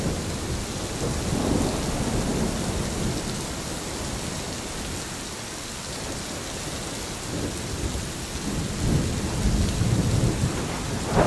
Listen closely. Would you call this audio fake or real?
real